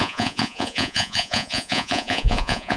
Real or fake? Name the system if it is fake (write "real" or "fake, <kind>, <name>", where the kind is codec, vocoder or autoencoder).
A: fake, vocoder, Vocos